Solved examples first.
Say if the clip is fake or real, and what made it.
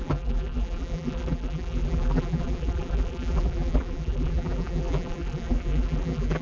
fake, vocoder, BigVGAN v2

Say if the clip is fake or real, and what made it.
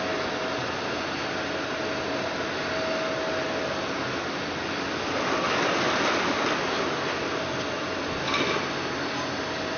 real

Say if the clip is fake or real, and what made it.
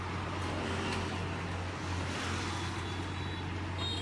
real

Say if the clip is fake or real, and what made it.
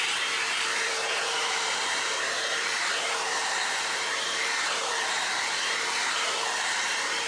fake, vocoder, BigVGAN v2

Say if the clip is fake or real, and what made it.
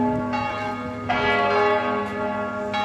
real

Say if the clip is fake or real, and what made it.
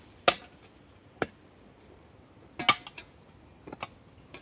real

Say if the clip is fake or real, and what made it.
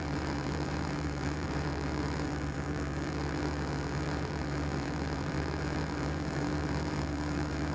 fake, vocoder, BigVGAN v2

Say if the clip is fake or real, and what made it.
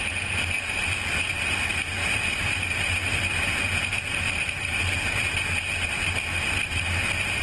real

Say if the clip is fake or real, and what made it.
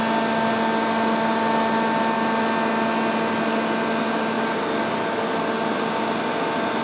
real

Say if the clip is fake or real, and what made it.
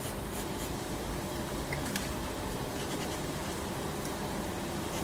fake, vocoder, BigVGAN v2